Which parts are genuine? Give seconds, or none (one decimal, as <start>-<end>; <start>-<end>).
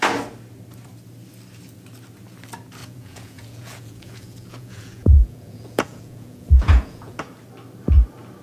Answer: 0.0-2.8; 7.2-8.4